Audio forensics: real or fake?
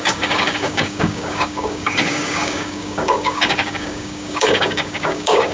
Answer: fake